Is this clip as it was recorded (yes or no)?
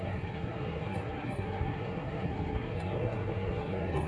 no